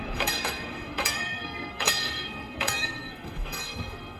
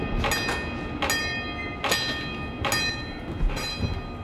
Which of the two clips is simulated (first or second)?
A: first